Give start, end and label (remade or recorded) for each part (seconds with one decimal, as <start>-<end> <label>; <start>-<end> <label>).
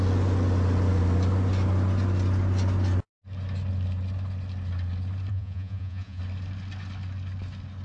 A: 0.0-5.3 recorded; 5.3-6.2 remade; 6.2-7.8 recorded